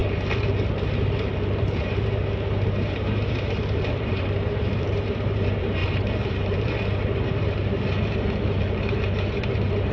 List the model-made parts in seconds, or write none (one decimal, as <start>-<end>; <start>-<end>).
1.6-9.9